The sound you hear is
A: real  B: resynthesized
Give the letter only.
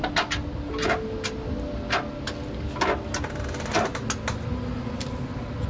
A